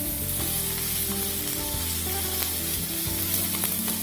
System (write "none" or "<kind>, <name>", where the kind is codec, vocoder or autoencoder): none